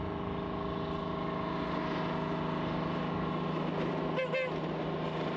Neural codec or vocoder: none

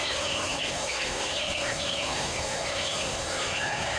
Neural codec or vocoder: codec, SNAC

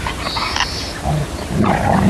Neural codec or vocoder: none